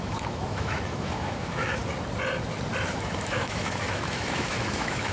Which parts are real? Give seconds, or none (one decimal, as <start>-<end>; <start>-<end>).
1.8-2.9